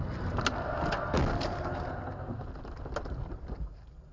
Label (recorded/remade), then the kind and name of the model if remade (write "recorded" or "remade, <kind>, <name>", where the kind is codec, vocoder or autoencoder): recorded